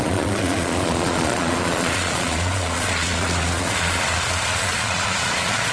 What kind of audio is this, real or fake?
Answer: fake